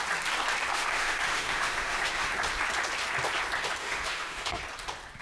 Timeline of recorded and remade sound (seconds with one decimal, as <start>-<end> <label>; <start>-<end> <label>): 0.0-0.7 recorded; 0.7-2.3 remade; 2.3-3.8 recorded; 3.8-4.6 remade; 4.6-5.2 recorded